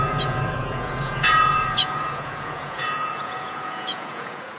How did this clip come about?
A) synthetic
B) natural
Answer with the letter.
A